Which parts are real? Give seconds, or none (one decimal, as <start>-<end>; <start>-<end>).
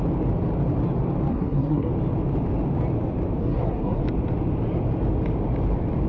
0.0-1.3; 1.9-3.4; 4.0-6.1